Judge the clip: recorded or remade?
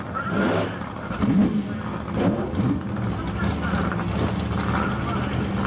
recorded